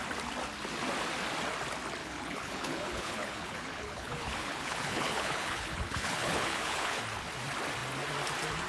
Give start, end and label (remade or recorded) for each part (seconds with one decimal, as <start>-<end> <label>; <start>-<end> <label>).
0.0-2.0 recorded; 2.0-7.0 remade; 7.0-8.7 recorded